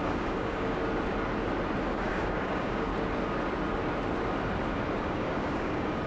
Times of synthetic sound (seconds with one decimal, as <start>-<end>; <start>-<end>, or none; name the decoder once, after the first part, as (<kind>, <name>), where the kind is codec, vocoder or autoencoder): 0.0-0.8 (codec, DAC); 1.8-2.9; 5.0-6.1